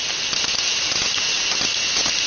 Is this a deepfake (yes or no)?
no